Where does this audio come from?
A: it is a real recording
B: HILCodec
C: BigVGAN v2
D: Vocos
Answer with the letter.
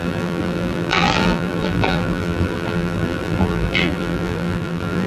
C